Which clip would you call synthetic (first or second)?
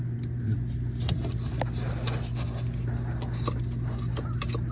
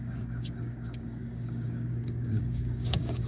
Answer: second